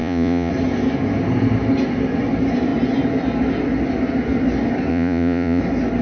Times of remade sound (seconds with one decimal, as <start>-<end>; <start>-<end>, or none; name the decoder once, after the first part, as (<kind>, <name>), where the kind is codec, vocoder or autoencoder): 0.0-0.5 (vocoder, Vocos); 4.9-5.6